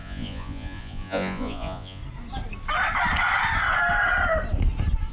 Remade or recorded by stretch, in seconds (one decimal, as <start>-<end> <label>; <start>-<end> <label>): 0.0-2.0 remade; 2.0-5.1 recorded